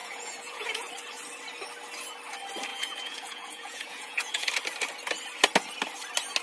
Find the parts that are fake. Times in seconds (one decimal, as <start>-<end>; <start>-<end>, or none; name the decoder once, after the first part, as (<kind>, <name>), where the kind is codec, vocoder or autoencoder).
0.0-0.9 (vocoder, Vocos); 2.7-4.5